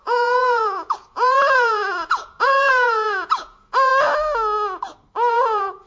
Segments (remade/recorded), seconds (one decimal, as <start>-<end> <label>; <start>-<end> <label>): 0.0-3.9 remade; 3.9-5.3 recorded; 5.3-5.9 remade